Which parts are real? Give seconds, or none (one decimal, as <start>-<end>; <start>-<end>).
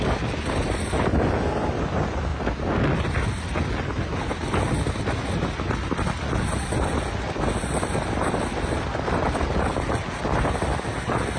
0.0-11.4